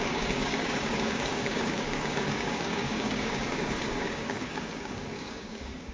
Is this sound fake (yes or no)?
yes